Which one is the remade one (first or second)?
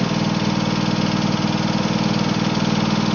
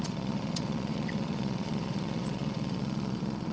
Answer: second